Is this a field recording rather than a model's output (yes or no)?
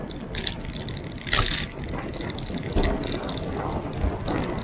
yes